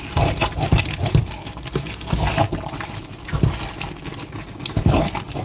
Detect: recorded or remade recorded